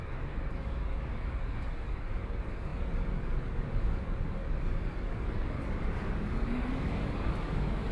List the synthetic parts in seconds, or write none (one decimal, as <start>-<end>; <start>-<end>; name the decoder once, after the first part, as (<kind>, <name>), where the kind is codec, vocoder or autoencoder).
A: 0.0-7.9 (codec, DAC)